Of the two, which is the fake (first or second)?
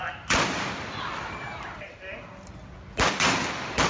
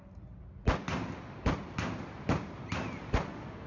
first